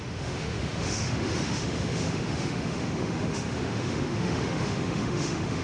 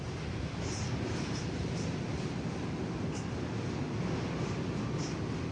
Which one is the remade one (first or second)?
first